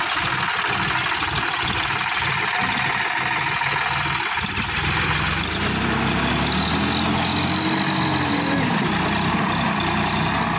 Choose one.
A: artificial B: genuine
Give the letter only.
B